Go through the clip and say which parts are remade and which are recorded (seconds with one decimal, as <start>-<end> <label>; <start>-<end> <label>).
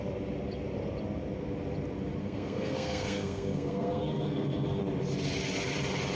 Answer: 0.0-2.2 recorded; 2.2-4.8 remade; 4.8-6.2 recorded